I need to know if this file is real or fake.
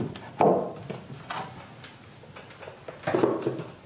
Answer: fake